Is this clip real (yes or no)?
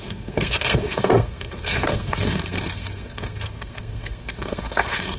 no